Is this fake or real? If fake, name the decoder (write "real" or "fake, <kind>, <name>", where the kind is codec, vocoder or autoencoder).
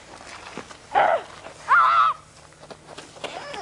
real